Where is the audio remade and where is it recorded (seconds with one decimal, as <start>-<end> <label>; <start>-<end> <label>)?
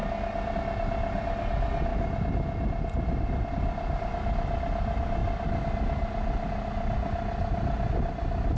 0.0-8.6 recorded